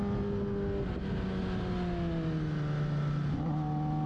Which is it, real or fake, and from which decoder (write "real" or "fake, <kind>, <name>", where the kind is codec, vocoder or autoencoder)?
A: real